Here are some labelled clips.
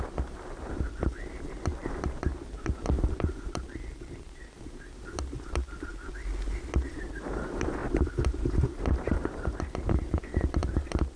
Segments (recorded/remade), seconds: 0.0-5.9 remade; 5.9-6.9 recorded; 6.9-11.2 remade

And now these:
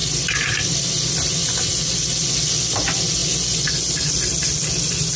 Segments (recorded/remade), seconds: 0.0-5.2 recorded

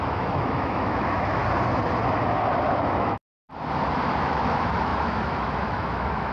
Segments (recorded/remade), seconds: 0.0-1.4 remade; 1.4-2.7 recorded; 2.7-3.5 remade; 3.5-4.1 recorded; 4.1-6.3 remade

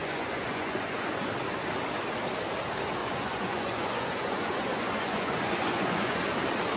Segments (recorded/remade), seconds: 0.0-1.2 remade; 1.2-3.0 recorded; 3.0-6.2 remade; 6.2-6.8 recorded

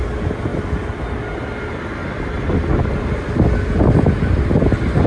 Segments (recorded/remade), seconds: 0.0-5.1 recorded